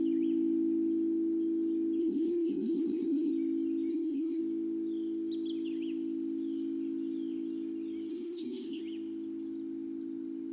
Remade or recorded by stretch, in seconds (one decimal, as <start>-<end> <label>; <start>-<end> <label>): 0.0-2.0 recorded; 2.0-3.3 remade; 3.3-3.9 recorded; 3.9-4.4 remade; 4.4-8.1 recorded; 8.1-8.8 remade; 8.8-10.5 recorded